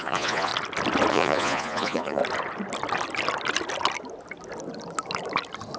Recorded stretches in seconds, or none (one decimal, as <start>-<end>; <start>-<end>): 0.5-1.1; 2.2-5.8